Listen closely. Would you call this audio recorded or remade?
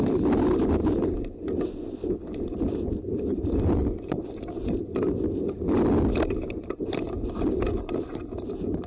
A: recorded